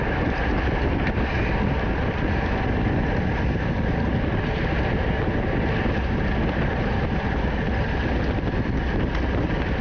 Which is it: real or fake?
real